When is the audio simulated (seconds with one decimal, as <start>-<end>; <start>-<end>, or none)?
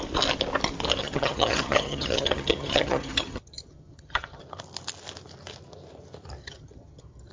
1.0-4.4; 6.4-7.3